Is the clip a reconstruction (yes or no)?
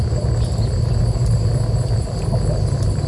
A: no